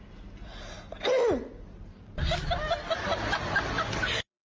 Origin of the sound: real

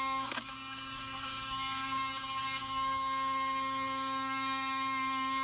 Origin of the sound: fake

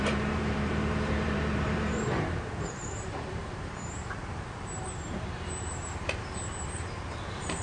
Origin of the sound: fake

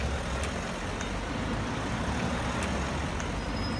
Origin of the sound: real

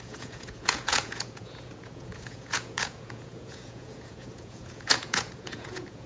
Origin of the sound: fake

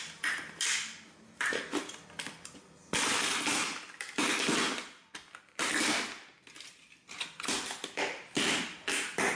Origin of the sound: real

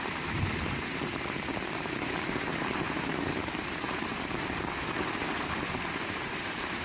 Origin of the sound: fake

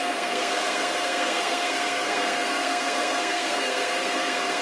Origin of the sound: fake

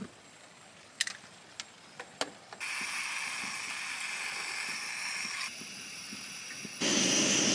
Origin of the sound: real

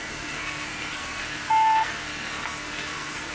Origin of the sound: fake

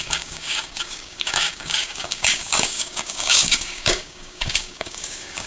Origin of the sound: fake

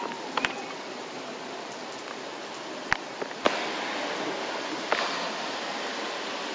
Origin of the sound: real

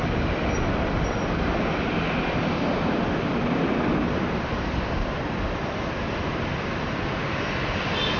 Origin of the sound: real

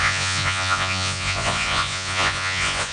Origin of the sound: fake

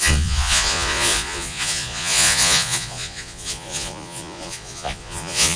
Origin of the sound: fake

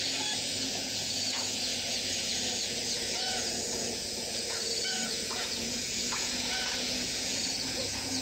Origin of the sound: fake